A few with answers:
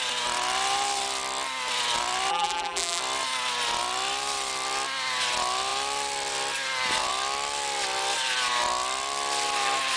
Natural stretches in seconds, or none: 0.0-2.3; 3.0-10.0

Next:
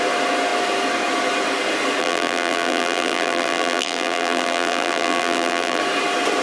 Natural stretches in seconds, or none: 0.0-2.0; 5.8-6.4

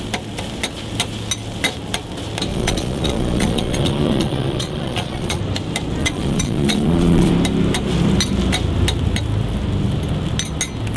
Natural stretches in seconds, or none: 0.0-2.5; 5.4-6.0; 7.3-11.0

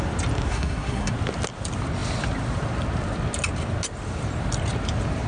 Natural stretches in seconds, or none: 0.0-0.5; 1.1-5.3

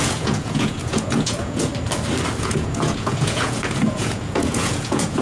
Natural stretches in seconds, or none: 1.7-2.4

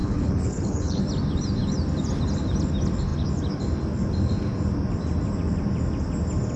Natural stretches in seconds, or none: 1.0-6.6

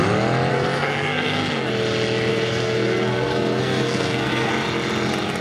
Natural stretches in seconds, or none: 0.0-0.5; 1.7-2.3; 4.5-5.4

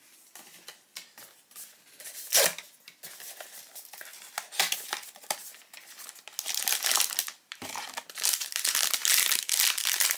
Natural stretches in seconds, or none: 2.5-3.0; 5.4-6.5